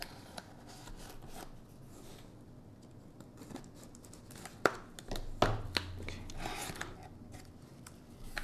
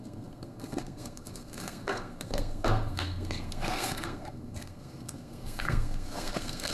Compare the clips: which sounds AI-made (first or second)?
second